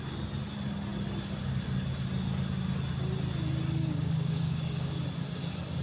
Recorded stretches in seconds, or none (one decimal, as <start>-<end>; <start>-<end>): 0.0-3.8; 5.0-5.8